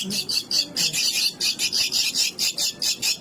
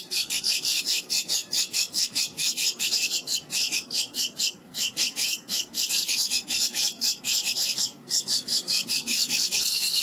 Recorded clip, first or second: first